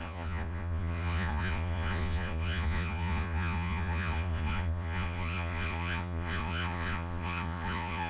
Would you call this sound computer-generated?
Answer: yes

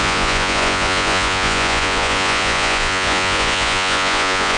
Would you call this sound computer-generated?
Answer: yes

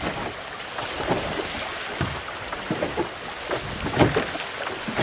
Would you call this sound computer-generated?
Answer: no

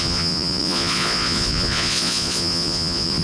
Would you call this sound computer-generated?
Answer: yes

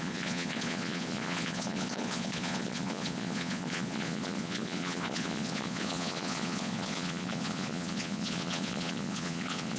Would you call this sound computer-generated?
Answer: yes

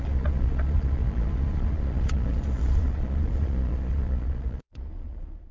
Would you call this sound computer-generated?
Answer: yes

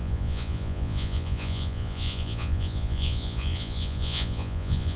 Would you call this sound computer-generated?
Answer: yes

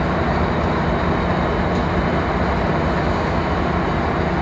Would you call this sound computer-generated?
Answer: no